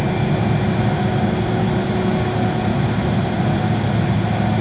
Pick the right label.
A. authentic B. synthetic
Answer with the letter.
A